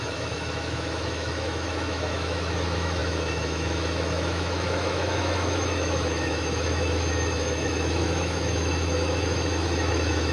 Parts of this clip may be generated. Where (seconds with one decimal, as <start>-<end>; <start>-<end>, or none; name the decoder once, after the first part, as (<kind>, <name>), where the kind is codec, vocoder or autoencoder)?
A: 0.0-10.3 (autoencoder, DAC-VAE)